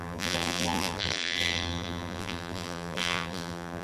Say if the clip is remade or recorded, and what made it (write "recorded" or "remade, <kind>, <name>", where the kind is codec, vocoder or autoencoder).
remade, vocoder, BigVGAN v2